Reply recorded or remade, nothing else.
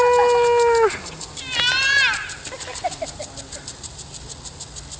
recorded